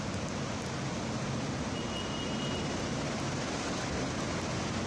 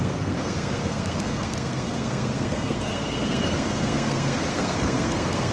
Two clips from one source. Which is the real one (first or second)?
first